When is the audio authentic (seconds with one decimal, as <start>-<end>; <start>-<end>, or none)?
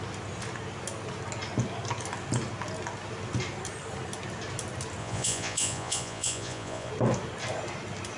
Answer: 0.0-5.0; 6.9-8.2